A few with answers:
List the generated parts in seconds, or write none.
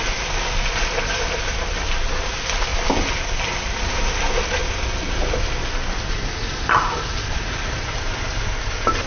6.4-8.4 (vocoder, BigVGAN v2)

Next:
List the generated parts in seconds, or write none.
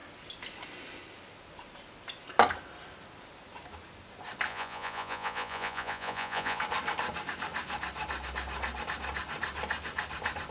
4.5-6.6 (vocoder, Vocos)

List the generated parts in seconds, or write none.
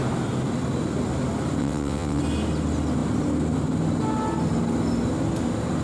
1.6-2.2 (vocoder, WaveNeXt)